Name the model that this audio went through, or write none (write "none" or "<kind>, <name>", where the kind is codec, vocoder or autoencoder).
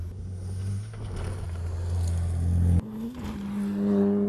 none